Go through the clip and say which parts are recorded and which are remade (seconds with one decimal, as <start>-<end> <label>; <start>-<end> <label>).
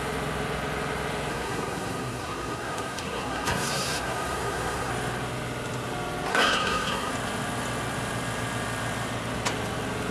0.0-1.3 recorded; 1.3-4.9 remade; 4.9-6.3 recorded; 6.3-7.1 remade; 7.1-10.1 recorded